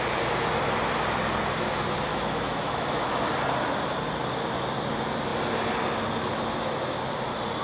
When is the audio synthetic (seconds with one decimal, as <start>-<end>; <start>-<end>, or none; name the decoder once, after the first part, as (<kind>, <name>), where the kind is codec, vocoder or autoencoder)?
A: 2.1-3.2 (autoencoder, DAC-VAE)